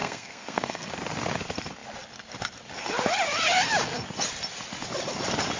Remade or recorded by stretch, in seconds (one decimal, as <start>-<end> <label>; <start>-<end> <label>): 0.0-0.9 remade; 0.9-5.6 recorded